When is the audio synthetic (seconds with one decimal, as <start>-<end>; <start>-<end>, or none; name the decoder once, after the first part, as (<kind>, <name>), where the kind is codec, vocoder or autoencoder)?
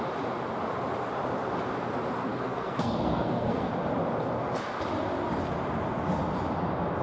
2.3-3.7 (codec, SNAC)